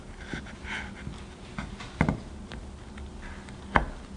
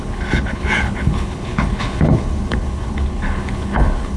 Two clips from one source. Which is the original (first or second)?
first